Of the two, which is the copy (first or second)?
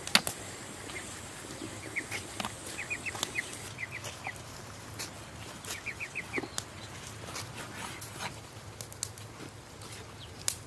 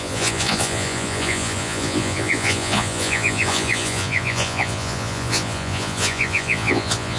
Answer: second